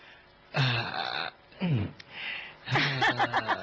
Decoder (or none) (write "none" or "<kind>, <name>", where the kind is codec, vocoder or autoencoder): none